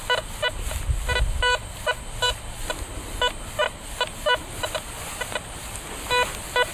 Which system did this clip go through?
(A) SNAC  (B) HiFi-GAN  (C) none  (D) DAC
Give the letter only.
C